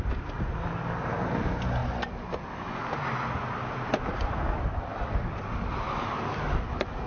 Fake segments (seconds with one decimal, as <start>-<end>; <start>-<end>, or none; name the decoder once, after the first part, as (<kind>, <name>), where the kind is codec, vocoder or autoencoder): none